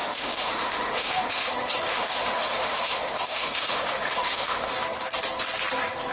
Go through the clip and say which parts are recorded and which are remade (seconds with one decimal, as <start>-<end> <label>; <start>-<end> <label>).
0.0-1.5 remade; 1.5-1.9 recorded; 1.9-4.7 remade; 4.7-6.1 recorded